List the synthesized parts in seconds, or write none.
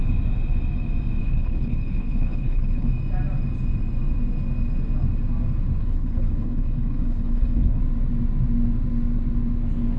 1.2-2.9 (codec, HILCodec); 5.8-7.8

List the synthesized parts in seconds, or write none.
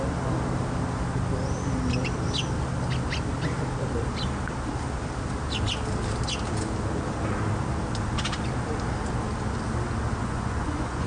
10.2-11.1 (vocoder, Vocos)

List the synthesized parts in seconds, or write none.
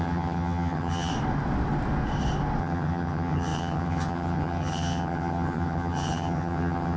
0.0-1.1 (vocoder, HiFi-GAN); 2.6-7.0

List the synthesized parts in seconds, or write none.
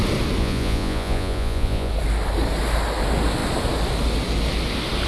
0.4-1.9 (vocoder, Vocos)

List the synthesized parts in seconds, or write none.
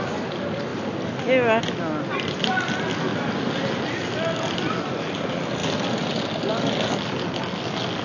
none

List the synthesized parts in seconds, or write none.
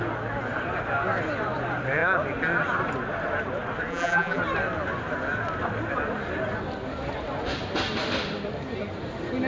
3.9-4.4 (vocoder, BigVGAN v2)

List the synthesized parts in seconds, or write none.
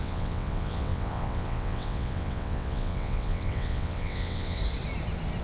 0.0-4.6 (vocoder, WaveNeXt)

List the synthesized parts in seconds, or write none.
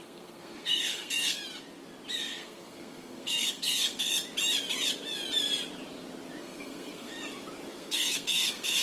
0.0-1.4 (codec, SNAC); 2.2-4.1; 6.4-7.1; 7.7-8.8